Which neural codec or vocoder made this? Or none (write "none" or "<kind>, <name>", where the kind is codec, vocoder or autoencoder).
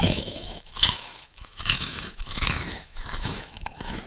autoencoder, DAC-VAE